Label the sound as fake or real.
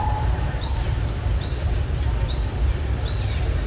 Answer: fake